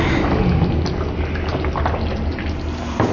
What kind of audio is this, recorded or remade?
recorded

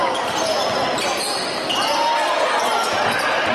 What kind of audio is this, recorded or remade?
recorded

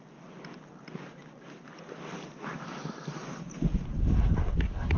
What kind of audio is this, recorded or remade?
recorded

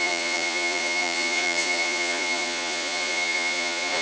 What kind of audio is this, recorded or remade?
remade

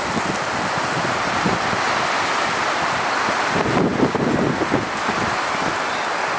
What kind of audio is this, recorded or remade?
recorded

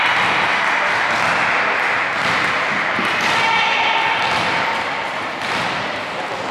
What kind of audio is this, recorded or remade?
recorded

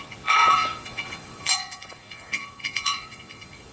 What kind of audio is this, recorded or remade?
remade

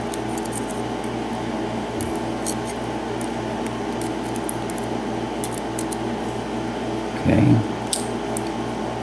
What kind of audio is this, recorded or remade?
recorded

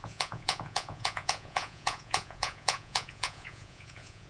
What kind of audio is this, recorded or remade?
remade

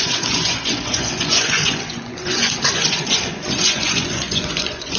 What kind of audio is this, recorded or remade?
remade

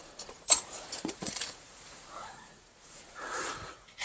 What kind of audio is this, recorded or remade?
remade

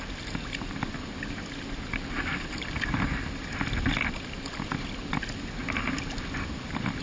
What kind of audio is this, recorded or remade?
recorded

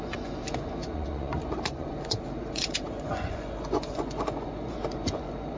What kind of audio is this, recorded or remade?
remade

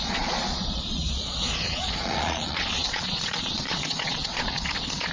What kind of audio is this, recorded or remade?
remade